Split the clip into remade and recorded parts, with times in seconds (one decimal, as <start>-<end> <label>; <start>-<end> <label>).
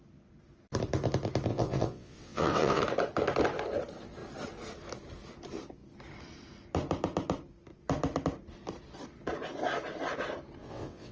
0.0-1.5 recorded; 1.5-2.8 remade; 2.8-10.6 recorded; 10.6-11.1 remade